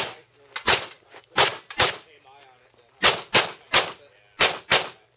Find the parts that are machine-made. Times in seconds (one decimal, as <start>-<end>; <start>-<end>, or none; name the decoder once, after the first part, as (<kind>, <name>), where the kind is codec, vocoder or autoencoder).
none